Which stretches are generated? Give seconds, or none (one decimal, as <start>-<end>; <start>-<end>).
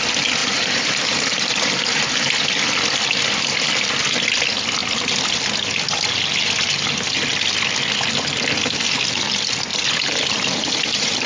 0.4-2.0; 9.7-11.3